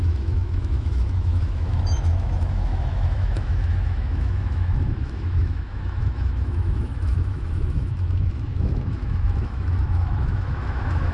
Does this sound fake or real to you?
fake